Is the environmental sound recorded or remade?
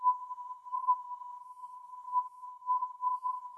remade